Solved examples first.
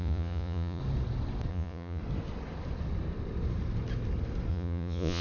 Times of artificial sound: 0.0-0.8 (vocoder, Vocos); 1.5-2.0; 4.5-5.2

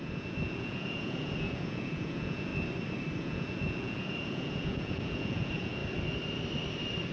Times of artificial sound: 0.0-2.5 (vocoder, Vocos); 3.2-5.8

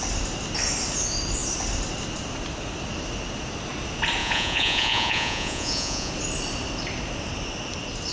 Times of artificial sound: 4.2-6.1 (vocoder, Vocos)

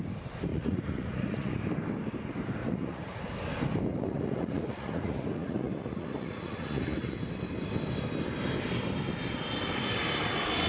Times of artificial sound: 0.5-1.5 (vocoder, Vocos); 2.6-3.2; 3.9-7.2

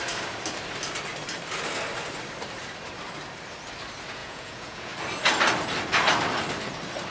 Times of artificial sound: 4.2-4.9 (vocoder, Vocos)